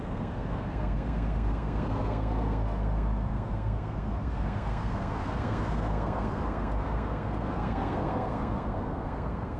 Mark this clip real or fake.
fake